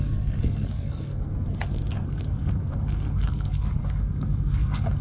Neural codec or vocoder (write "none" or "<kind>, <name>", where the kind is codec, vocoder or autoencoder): codec, SNAC